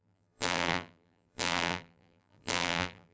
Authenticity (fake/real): fake